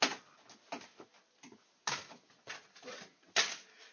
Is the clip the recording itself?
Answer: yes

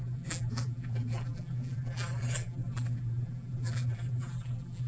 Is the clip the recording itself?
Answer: no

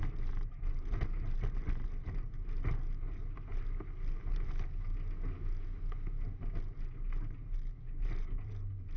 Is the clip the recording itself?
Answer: yes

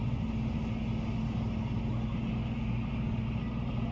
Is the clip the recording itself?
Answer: yes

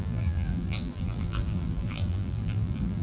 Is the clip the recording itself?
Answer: no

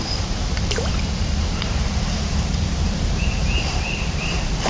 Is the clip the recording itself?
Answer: no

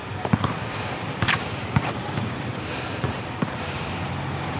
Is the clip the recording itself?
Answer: no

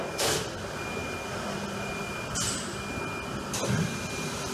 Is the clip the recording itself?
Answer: yes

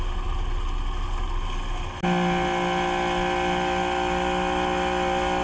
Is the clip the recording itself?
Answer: yes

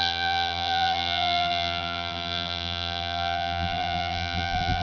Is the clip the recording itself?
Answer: no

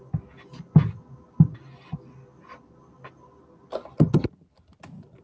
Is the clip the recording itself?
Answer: yes